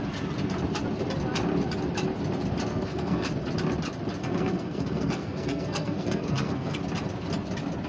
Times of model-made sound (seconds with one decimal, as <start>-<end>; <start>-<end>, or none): 2.7-3.3; 4.2-6.8